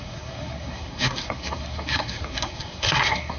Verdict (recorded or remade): remade